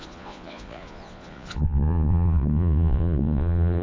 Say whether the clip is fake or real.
fake